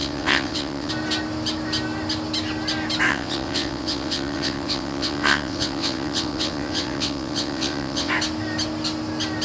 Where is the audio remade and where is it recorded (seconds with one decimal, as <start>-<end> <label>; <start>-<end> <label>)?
0.0-0.9 remade; 0.9-3.1 recorded; 3.1-8.1 remade; 8.1-9.4 recorded